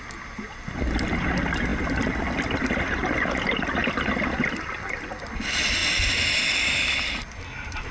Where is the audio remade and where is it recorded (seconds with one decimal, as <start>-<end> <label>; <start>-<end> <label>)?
0.0-3.8 recorded; 3.8-5.2 remade; 5.2-5.8 recorded; 5.8-7.1 remade; 7.1-7.9 recorded